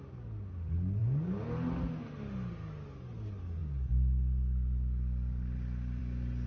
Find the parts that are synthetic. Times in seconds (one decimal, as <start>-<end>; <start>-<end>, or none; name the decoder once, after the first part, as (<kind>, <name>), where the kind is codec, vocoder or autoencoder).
none